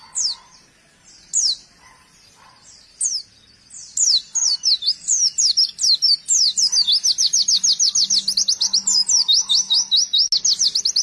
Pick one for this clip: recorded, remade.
recorded